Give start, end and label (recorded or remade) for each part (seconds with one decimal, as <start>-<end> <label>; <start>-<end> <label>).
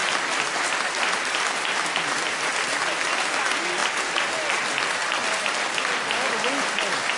0.0-3.1 remade; 3.1-3.8 recorded; 3.8-4.7 remade; 4.7-7.2 recorded